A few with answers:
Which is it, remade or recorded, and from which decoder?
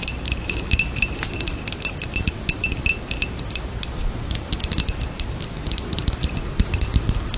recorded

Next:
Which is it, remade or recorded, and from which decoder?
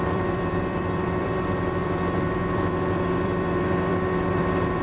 remade, vocoder, BigVGAN v2